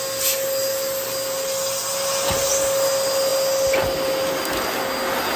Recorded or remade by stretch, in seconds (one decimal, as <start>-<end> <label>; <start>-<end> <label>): 0.0-5.4 recorded